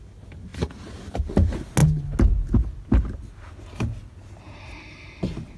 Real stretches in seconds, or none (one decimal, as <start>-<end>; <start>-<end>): 0.0-5.6

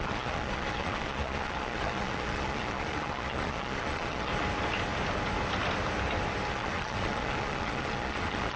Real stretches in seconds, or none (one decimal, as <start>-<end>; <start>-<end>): 4.3-6.5

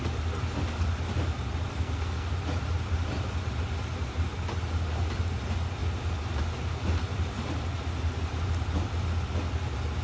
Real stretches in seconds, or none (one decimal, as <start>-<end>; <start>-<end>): 0.0-1.7; 2.3-10.0

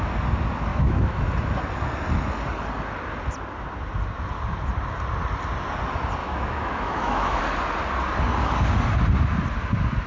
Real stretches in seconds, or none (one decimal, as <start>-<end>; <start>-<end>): 0.0-0.7; 1.2-6.2; 7.4-10.1